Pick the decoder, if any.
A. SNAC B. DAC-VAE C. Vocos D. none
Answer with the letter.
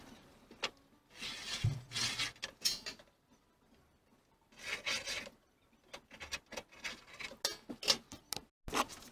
D